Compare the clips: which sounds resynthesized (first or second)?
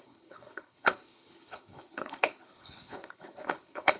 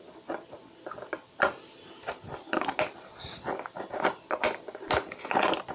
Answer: first